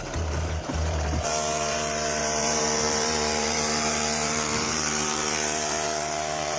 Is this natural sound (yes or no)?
no